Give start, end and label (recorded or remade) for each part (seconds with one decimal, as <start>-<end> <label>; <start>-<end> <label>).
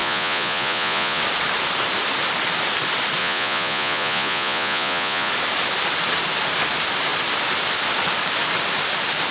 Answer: 0.0-1.2 remade; 1.2-3.2 recorded; 3.2-5.3 remade; 5.3-9.3 recorded